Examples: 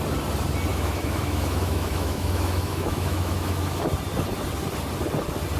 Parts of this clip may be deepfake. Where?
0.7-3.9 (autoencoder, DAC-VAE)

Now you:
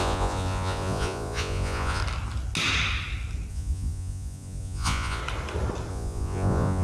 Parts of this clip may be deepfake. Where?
0.0-2.0 (vocoder, Vocos); 3.5-5.2; 5.9-6.8

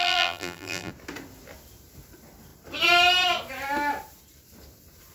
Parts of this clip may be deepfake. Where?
0.0-0.9 (vocoder, BigVGAN v2)

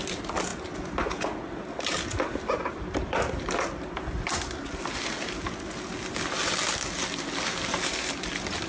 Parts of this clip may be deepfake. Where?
none

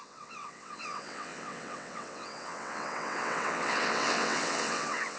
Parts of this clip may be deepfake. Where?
0.0-5.2 (vocoder, WaveNeXt)

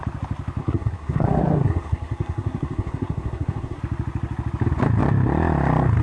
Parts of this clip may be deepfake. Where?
0.6-3.8 (codec, SNAC)

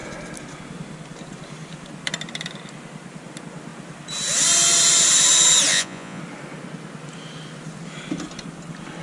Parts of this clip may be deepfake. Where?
5.7-6.2 (vocoder, Vocos)